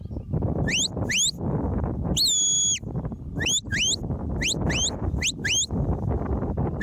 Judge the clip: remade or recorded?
recorded